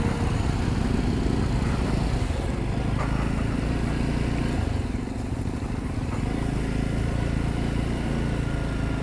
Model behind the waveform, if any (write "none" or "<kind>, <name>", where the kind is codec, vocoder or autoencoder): none